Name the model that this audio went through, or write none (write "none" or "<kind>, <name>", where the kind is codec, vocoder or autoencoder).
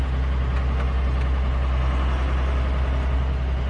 none